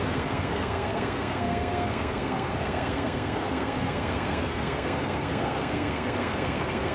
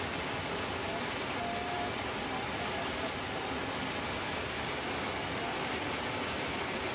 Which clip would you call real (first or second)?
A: second